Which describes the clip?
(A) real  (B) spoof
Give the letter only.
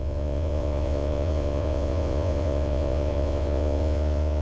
B